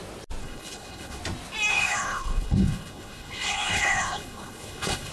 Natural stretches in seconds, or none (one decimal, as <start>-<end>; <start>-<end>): 0.0-0.4; 1.2-1.7